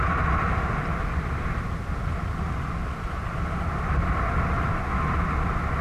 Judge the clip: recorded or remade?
recorded